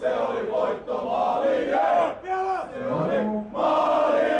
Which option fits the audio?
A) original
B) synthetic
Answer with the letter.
A